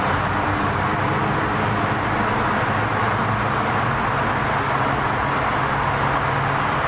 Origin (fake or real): real